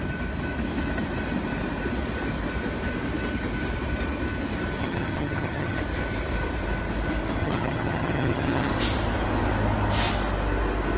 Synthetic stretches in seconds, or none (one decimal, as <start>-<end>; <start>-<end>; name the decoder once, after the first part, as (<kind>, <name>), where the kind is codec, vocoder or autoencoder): 4.8-5.8 (vocoder, HiFi-GAN); 7.4-8.7